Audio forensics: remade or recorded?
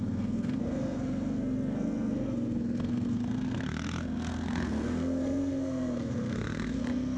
remade